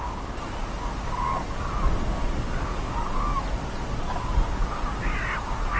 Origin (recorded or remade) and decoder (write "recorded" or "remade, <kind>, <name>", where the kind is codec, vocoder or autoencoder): recorded